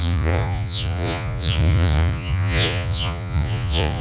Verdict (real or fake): fake